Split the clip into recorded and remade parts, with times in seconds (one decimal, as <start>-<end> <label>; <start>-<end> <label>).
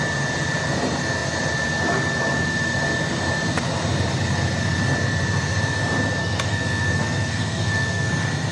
0.0-6.2 recorded; 6.2-8.1 remade; 8.1-8.5 recorded